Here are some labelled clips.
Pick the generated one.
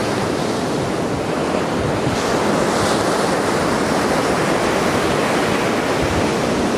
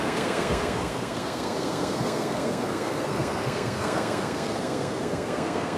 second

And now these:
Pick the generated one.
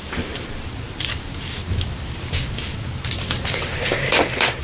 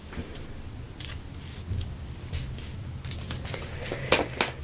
first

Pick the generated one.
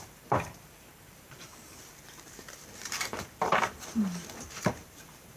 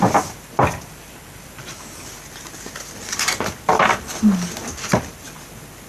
first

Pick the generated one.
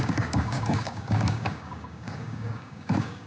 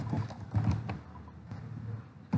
first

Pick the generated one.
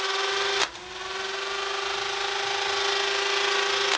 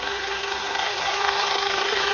second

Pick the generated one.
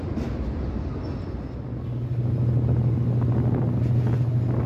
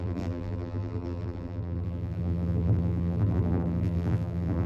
second